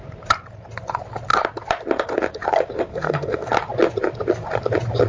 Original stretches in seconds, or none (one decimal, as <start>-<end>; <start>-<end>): 0.0-2.9; 3.5-5.1